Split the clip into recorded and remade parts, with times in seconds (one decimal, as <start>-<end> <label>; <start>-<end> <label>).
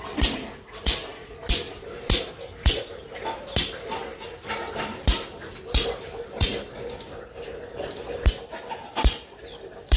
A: 0.0-4.1 remade; 4.1-4.8 recorded; 4.8-10.0 remade